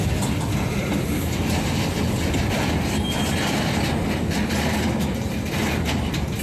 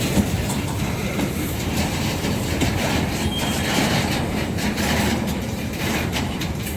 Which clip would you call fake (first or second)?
second